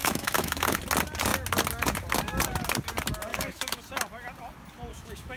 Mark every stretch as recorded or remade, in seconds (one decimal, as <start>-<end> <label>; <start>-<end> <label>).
0.0-0.8 remade; 0.8-3.3 recorded; 3.3-3.8 remade; 3.8-4.9 recorded; 4.9-5.4 remade